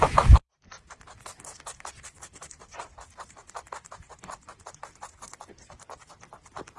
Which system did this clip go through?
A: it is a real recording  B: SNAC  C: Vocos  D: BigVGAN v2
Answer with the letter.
D